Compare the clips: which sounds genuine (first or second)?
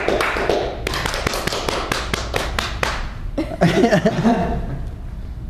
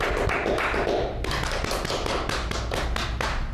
second